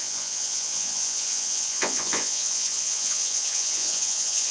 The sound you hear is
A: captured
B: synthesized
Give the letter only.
B